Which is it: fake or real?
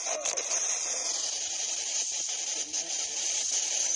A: fake